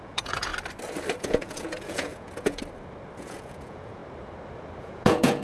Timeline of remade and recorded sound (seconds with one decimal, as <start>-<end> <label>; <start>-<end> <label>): 0.0-0.5 remade; 0.5-1.2 recorded; 1.2-2.6 remade; 2.6-3.2 recorded; 3.2-4.0 remade; 4.0-4.8 recorded; 4.8-5.4 remade